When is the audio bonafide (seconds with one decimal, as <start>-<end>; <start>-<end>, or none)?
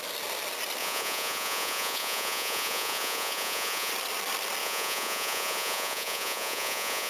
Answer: 0.0-0.8; 3.9-4.6